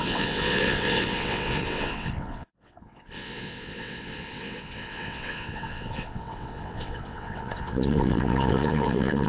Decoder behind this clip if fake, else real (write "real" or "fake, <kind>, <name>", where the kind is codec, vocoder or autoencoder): fake, vocoder, WaveNeXt